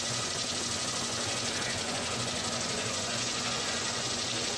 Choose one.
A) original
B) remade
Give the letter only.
B